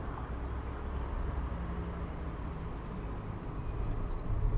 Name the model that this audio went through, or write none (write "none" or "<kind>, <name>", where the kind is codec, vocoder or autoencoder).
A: none